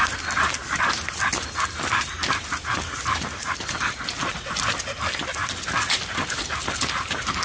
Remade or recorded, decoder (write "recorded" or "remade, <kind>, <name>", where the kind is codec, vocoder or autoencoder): recorded